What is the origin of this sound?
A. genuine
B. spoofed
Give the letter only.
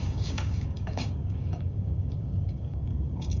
B